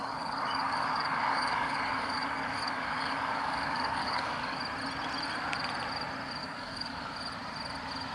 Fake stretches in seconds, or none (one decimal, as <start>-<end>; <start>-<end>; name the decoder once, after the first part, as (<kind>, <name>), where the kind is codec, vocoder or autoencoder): 0.0-4.6 (codec, DAC); 6.4-7.1